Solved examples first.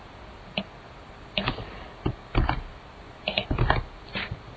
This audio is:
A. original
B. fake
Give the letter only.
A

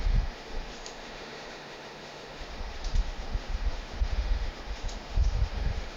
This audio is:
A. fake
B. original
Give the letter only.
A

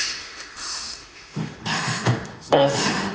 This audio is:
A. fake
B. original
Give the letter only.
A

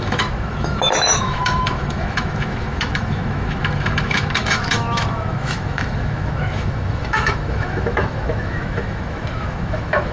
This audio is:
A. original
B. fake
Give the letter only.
B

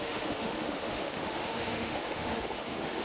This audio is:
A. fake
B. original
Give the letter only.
A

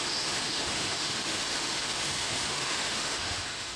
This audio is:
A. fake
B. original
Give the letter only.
A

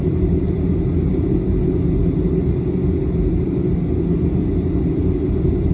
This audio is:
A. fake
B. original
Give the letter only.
B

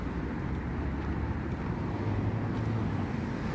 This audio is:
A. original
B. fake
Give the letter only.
A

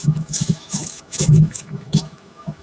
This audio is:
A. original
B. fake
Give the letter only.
B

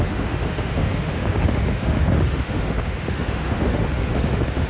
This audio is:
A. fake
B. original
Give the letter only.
A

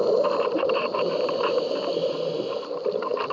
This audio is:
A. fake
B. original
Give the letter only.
B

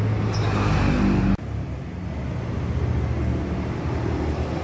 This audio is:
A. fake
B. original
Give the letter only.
B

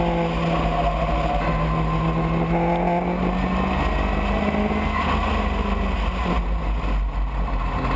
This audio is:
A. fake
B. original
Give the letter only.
B